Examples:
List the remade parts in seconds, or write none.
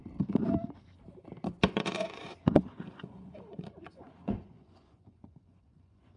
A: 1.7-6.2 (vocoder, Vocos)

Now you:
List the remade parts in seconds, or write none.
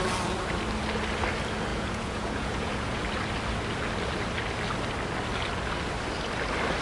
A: 1.7-3.0 (vocoder, Vocos)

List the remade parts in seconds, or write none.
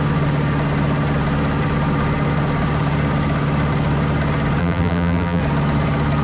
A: 4.6-5.4 (vocoder, BigVGAN v2)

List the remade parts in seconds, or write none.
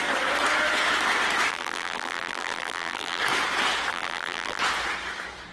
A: 1.5-3.2 (vocoder, BigVGAN v2); 3.9-4.6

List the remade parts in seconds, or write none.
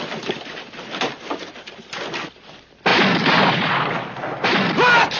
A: none